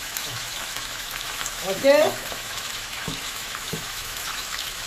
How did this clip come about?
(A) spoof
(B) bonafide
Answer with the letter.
A